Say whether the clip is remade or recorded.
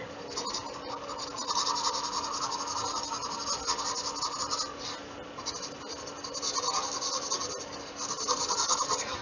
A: recorded